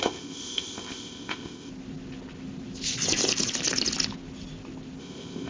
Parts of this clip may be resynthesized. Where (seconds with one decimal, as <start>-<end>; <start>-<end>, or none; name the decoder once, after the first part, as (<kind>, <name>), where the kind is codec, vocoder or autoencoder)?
0.0-1.7 (codec, ZipCodec); 5.0-5.5